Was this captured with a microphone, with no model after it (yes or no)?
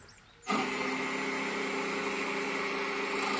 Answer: yes